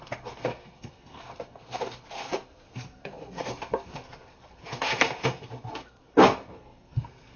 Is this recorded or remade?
remade